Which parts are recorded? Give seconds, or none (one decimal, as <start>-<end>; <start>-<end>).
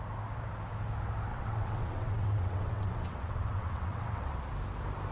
0.0-1.3; 4.4-5.1